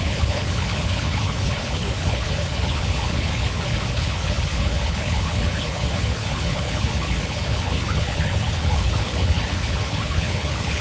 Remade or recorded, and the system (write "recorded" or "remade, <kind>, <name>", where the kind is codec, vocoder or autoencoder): remade, codec, HILCodec